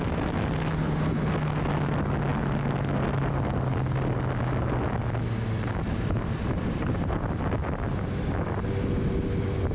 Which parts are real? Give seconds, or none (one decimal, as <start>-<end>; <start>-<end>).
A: 0.0-9.7